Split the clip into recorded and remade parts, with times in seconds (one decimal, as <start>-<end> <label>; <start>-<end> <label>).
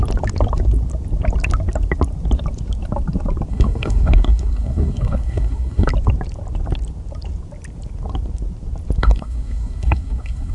0.0-3.5 recorded; 3.5-5.9 remade; 5.9-9.0 recorded; 9.0-10.5 remade